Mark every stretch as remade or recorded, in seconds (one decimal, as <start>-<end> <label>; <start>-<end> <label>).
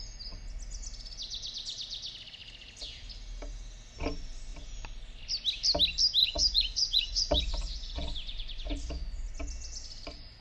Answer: 0.0-6.2 recorded; 6.2-9.3 remade; 9.3-10.4 recorded